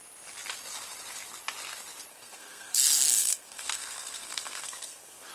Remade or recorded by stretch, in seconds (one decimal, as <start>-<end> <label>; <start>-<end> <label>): 0.0-2.1 recorded; 2.1-5.3 remade